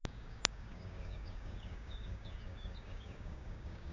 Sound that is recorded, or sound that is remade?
remade